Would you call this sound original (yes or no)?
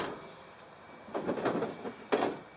yes